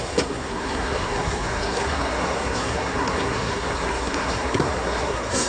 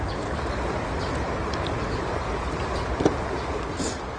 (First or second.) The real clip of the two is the second